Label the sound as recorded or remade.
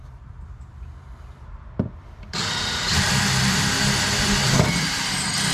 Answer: remade